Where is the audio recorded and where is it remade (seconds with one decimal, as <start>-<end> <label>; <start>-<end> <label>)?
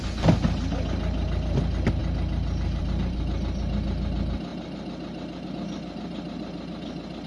0.0-7.3 recorded